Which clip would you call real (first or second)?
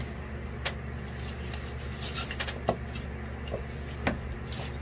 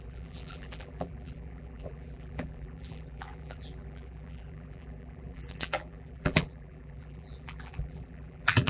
first